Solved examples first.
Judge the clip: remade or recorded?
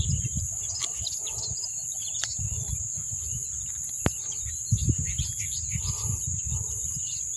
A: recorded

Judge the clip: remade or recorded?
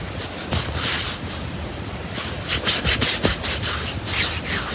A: recorded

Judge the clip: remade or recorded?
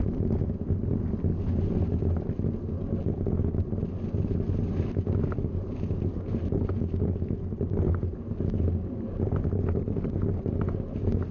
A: recorded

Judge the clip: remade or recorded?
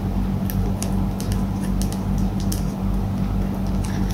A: recorded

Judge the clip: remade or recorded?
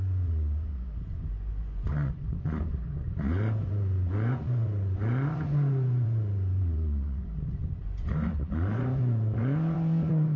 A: remade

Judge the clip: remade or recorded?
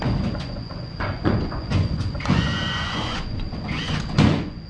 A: remade